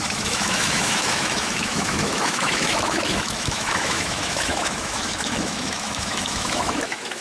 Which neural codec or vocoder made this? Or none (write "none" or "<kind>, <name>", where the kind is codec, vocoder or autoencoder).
autoencoder, DAC-VAE